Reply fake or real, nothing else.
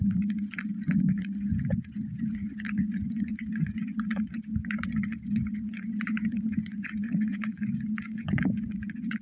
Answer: fake